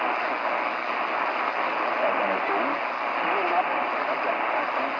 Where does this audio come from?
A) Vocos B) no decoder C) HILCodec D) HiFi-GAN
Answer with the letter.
B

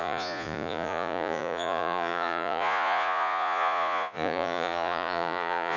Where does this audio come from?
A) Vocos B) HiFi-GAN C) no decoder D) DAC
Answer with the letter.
A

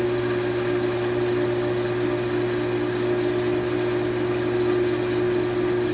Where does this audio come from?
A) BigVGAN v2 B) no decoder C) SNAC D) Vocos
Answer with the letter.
B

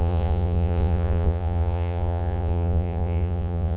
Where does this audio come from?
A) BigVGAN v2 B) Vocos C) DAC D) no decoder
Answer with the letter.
B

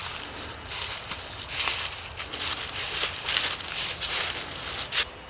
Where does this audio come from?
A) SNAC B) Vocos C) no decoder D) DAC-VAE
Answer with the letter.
C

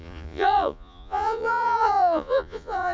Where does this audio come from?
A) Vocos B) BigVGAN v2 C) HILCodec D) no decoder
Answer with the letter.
A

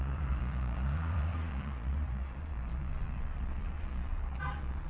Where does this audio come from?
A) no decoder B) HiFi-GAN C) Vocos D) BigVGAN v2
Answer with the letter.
C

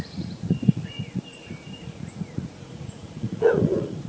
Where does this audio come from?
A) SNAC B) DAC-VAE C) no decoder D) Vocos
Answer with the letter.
D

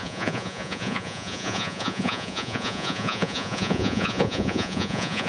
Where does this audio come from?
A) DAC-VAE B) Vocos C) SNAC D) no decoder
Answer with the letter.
B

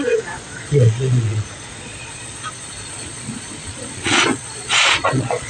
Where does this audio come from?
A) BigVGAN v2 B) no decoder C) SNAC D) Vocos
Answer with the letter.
D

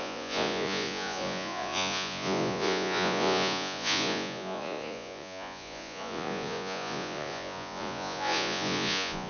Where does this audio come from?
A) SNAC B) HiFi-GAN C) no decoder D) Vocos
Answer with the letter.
D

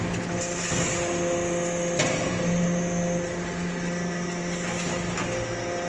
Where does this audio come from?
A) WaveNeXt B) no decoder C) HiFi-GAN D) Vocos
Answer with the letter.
B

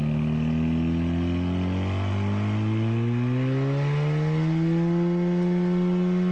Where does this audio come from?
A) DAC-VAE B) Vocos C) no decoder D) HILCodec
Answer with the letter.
C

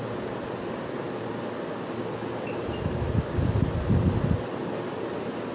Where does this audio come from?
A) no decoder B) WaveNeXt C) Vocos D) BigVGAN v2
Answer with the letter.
A